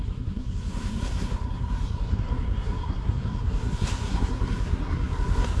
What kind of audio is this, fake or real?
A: fake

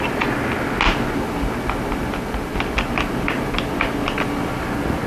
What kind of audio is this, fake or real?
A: real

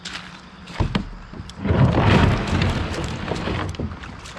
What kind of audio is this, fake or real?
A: fake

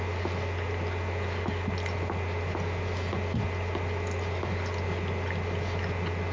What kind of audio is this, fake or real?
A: real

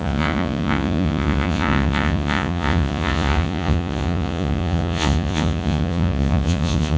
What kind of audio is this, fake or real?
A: fake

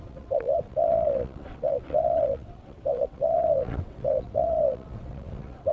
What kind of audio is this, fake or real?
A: fake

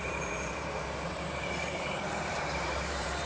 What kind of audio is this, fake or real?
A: fake